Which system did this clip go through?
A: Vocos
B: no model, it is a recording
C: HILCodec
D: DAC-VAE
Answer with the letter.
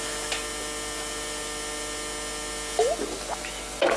B